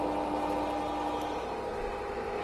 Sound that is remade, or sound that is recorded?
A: recorded